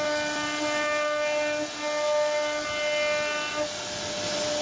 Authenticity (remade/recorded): recorded